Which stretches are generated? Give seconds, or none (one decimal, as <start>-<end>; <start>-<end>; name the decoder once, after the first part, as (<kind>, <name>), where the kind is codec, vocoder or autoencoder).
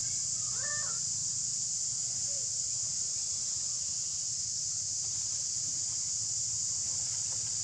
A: 0.0-0.7 (vocoder, Vocos); 1.2-4.6